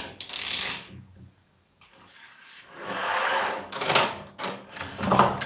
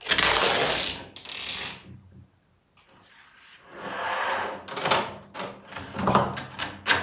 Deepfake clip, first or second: first